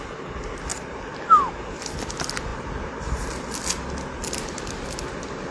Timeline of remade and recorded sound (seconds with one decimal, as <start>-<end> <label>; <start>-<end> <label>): 0.0-5.5 recorded